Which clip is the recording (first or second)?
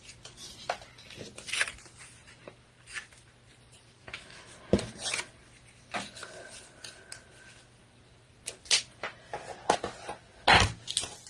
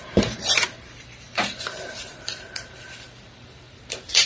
first